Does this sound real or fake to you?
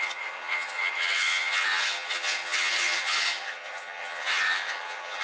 fake